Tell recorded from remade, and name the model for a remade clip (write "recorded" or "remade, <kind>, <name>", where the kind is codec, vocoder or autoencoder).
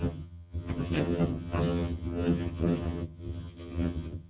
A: remade, vocoder, HiFi-GAN